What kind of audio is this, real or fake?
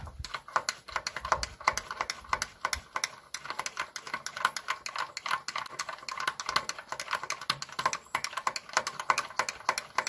real